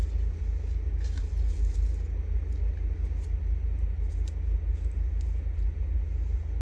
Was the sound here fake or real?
real